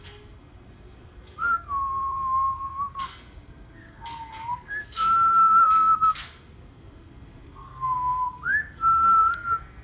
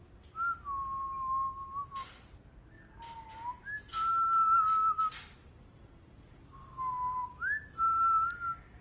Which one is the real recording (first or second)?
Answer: second